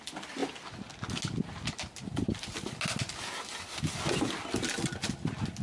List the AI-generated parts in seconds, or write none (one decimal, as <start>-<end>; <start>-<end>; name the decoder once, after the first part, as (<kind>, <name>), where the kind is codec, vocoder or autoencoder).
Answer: none